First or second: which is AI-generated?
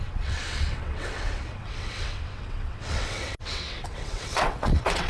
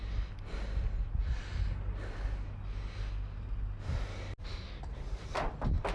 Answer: first